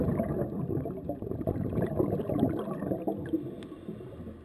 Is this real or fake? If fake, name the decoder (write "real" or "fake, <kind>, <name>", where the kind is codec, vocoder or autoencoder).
real